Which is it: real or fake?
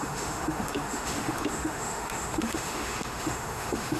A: fake